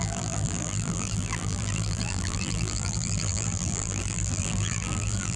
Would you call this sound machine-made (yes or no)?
yes